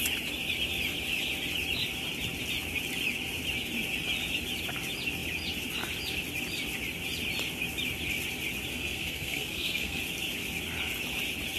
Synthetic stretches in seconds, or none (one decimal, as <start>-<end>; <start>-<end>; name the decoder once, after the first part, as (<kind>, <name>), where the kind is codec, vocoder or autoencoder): 8.7-10.0 (codec, SNAC)